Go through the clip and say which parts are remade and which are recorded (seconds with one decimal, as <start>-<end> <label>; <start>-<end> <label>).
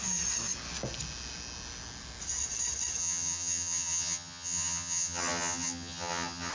0.0-3.0 recorded; 3.0-6.5 remade